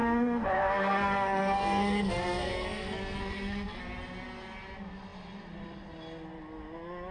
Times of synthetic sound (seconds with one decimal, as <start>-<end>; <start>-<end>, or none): 0.0-3.8